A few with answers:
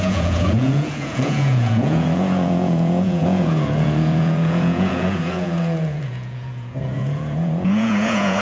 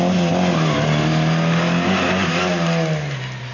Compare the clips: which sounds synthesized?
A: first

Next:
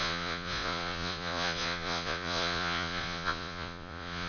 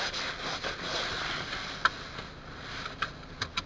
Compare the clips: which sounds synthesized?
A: first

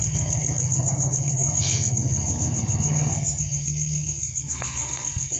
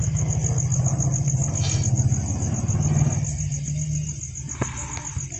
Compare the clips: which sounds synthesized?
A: first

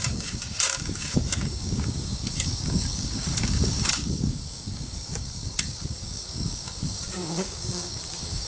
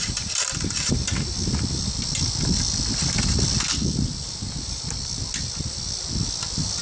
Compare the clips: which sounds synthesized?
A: first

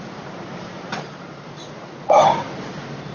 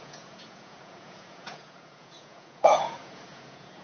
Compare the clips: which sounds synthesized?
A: second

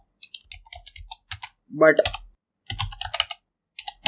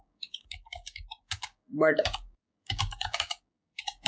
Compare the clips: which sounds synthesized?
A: second